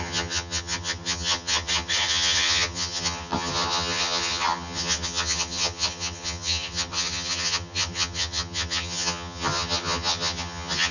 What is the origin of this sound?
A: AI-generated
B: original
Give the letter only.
A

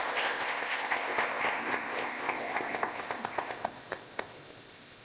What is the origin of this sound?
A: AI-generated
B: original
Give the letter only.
A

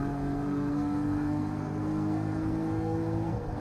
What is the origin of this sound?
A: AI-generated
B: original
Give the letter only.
A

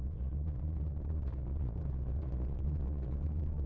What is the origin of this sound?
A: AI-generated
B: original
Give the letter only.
A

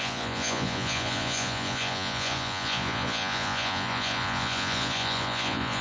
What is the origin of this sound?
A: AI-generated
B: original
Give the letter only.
A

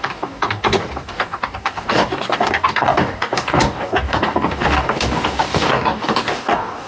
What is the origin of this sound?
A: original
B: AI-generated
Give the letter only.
B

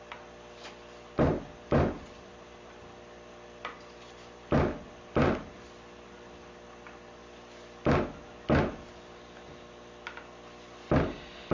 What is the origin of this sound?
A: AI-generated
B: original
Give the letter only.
B